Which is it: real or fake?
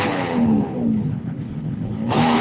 fake